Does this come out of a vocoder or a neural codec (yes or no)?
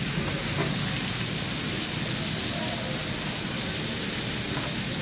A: no